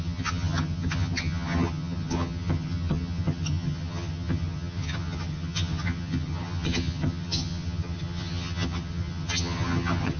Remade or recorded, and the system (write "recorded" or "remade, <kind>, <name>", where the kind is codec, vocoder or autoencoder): remade, vocoder, HiFi-GAN